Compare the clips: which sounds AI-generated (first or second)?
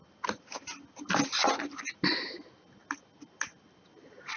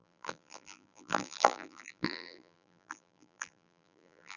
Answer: second